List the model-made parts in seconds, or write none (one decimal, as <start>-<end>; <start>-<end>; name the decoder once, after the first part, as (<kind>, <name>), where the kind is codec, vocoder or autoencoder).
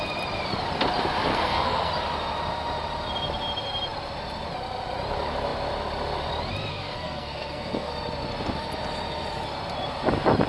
1.3-1.9 (codec, SNAC); 6.7-7.9